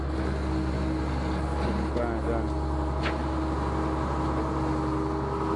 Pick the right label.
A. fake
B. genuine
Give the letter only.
B